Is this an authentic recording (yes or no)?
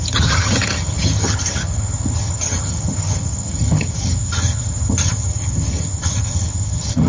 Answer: no